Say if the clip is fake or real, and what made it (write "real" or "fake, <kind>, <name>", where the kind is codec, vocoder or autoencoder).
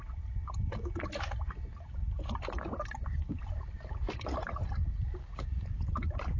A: real